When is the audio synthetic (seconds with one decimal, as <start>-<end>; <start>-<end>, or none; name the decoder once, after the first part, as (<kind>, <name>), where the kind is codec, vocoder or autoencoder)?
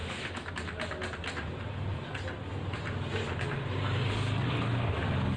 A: 0.0-0.5 (autoencoder, DAC-VAE)